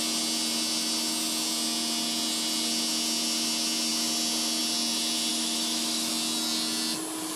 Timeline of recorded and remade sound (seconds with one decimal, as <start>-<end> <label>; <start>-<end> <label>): 0.0-5.3 recorded; 5.3-6.1 remade; 6.1-7.4 recorded

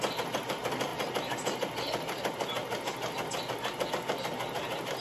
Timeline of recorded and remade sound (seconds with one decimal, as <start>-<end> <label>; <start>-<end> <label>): 0.0-5.0 recorded

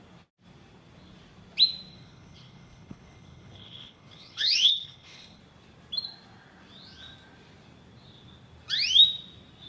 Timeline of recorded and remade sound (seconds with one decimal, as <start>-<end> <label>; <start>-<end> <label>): 0.0-1.9 recorded; 1.9-5.4 remade; 5.4-9.7 recorded